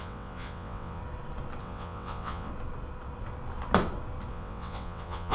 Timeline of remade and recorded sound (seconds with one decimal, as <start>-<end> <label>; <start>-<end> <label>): 0.0-1.0 remade; 1.0-1.6 recorded; 1.6-2.5 remade; 2.5-4.3 recorded; 4.3-5.3 remade